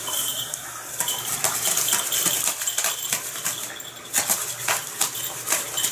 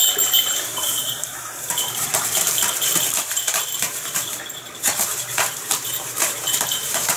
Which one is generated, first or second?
second